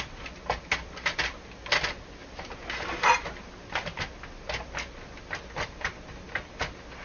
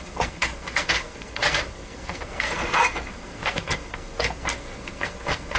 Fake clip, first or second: second